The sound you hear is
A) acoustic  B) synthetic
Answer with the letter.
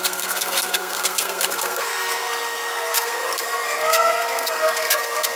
B